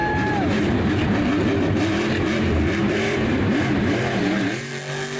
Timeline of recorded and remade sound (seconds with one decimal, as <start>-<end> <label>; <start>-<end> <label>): 0.0-0.9 remade; 0.9-2.8 recorded; 2.8-4.7 remade; 4.7-5.2 recorded